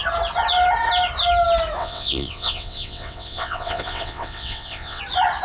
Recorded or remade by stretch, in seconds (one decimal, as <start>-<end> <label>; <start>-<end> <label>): 0.0-1.8 recorded; 1.8-5.0 remade; 5.0-5.4 recorded